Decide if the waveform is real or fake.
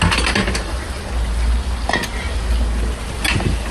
real